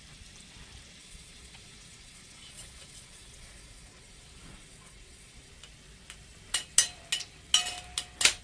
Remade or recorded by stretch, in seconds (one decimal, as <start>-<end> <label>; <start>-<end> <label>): 0.0-1.0 recorded; 1.0-5.5 remade; 5.5-8.4 recorded